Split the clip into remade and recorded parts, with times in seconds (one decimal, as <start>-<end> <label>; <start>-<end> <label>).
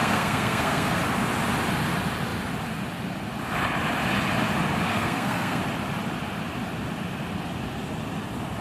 0.0-1.0 remade; 1.0-4.9 recorded; 4.9-5.6 remade; 5.6-8.6 recorded